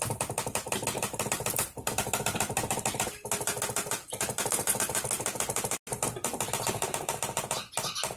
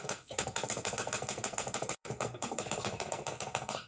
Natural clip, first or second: first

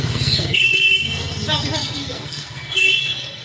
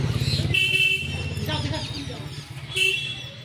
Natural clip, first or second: second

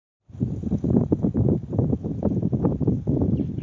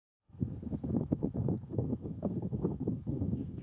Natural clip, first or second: first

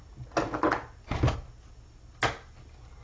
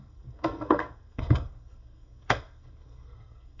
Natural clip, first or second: first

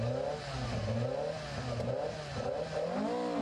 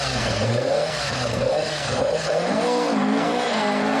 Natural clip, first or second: first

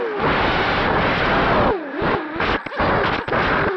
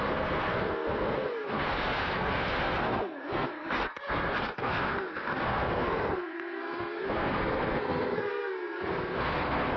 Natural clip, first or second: first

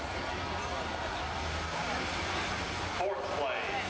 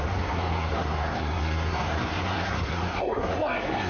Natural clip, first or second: first